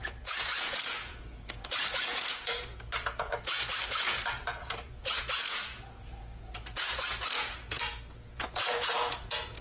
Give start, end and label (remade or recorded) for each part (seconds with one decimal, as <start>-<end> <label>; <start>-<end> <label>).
0.0-9.6 remade